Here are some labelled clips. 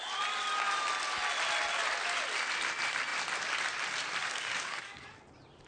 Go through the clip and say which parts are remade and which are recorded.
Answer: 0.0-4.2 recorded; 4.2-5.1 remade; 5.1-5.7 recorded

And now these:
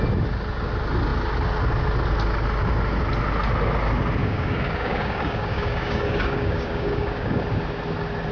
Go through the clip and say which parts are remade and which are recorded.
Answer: 0.0-4.2 recorded; 4.2-7.4 remade; 7.4-8.3 recorded

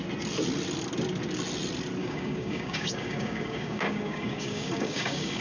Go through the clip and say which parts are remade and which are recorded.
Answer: 0.0-2.0 recorded; 2.0-5.4 remade

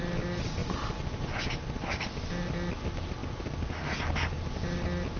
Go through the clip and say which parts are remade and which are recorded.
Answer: 0.0-5.2 recorded

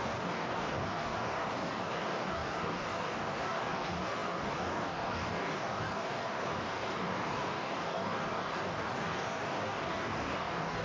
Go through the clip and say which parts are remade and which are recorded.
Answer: 0.0-10.8 remade

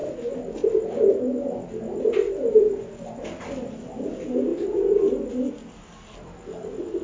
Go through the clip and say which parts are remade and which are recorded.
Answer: 0.0-7.0 recorded

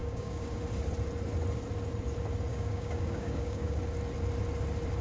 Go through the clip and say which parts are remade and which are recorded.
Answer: 0.0-0.6 remade; 0.6-2.5 recorded; 2.5-3.8 remade; 3.8-5.0 recorded

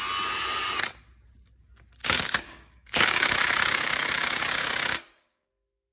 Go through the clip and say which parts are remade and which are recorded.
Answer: 0.0-2.0 recorded; 2.0-5.5 remade; 5.5-5.9 recorded